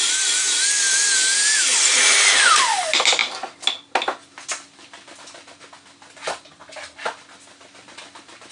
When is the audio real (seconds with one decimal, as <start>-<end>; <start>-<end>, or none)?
0.0-8.5